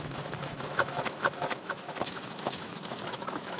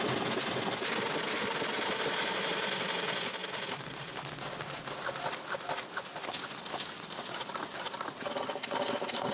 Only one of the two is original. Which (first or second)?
second